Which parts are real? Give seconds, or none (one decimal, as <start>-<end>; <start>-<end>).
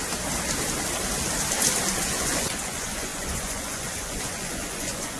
0.0-2.0